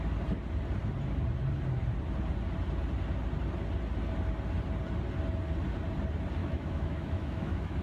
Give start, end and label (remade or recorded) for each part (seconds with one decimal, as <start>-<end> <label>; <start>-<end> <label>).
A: 0.0-6.4 recorded; 6.4-7.8 remade